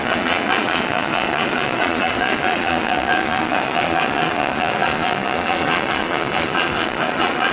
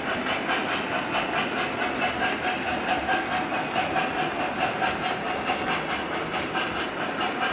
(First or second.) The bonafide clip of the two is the second